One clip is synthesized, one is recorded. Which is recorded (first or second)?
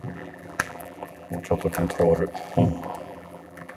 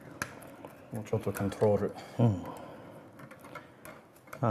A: second